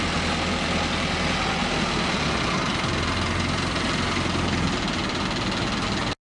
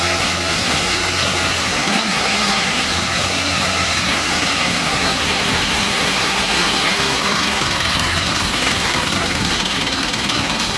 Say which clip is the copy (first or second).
second